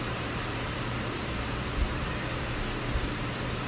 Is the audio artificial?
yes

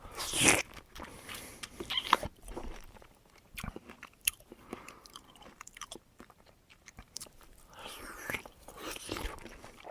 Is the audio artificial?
yes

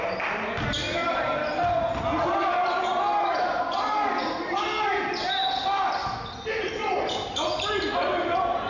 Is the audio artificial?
no